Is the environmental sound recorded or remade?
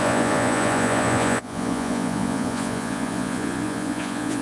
remade